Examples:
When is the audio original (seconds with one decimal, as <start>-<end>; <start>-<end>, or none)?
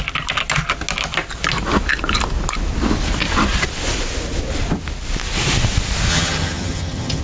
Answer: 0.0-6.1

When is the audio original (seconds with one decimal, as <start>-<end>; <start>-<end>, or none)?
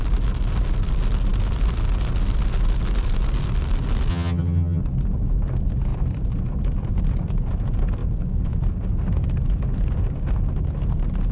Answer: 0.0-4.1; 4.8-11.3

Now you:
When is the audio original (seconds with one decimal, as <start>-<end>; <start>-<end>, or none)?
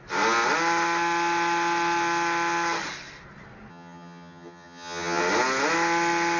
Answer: 0.0-3.7; 5.2-6.4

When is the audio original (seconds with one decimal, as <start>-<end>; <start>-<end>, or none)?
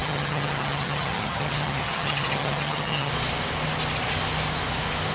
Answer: 3.1-5.1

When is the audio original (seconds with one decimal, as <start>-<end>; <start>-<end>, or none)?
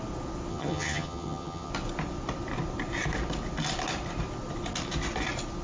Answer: 0.0-0.5; 1.7-5.6